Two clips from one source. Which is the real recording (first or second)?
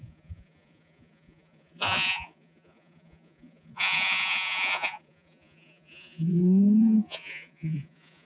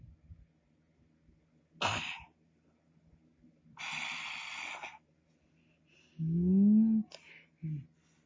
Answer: second